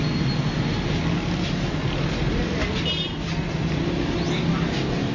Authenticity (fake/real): real